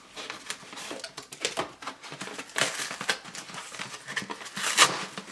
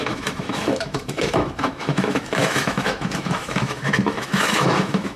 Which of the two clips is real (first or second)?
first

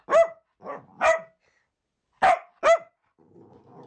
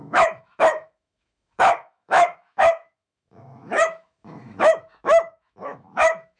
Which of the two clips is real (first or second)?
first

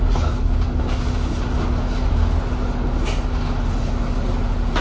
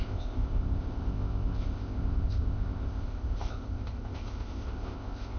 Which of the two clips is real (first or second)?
first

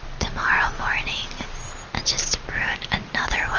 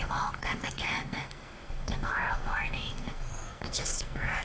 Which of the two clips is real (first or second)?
first